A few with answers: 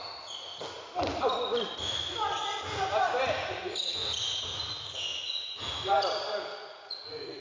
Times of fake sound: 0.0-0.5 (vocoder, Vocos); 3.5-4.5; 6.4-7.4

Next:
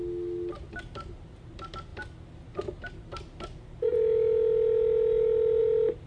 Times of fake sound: none